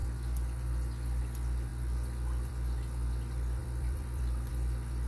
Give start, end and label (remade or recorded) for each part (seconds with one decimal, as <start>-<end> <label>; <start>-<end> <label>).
0.0-3.6 recorded; 3.6-4.5 remade; 4.5-5.1 recorded